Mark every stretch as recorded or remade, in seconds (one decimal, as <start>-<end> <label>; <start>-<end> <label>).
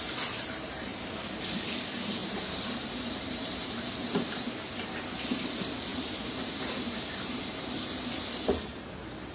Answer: 0.0-2.2 recorded; 2.2-4.3 remade; 4.3-5.9 recorded; 5.9-8.1 remade; 8.1-9.3 recorded